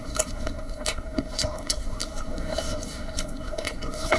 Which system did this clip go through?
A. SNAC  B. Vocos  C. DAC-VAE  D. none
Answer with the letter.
A